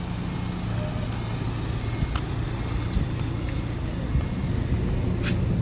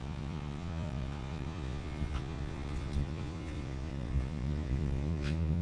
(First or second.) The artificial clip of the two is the second